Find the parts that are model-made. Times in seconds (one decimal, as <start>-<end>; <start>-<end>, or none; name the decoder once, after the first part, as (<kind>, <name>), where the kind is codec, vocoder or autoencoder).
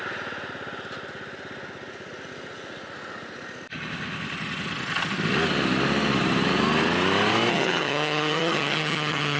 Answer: 7.5-9.4 (vocoder, HiFi-GAN)